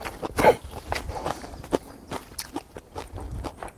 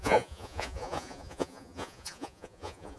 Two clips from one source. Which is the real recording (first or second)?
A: first